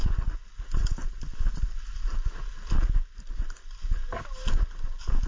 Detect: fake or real real